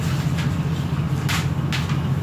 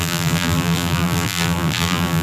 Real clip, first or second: first